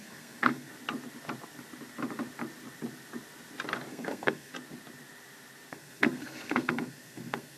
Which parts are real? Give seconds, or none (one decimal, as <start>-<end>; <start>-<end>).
0.7-3.9; 4.5-5.7